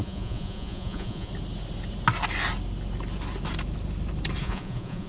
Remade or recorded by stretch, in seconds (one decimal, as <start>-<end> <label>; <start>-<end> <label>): 0.0-1.3 remade; 1.3-4.4 recorded; 4.4-5.1 remade